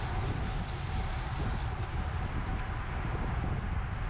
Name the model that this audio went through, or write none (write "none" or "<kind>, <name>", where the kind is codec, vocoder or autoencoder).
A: none